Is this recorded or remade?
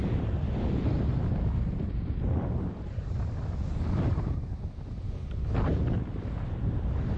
recorded